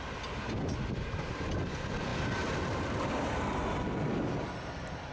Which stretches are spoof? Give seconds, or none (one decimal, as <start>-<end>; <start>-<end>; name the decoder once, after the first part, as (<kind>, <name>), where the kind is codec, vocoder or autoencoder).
none